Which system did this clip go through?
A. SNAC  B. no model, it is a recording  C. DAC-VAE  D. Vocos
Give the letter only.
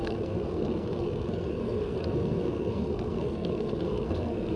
A